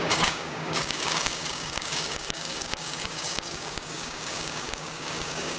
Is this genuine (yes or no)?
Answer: no